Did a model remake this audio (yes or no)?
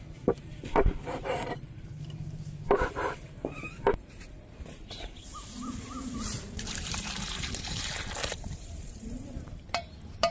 yes